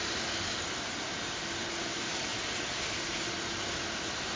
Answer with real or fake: real